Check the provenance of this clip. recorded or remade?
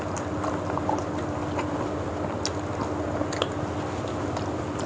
recorded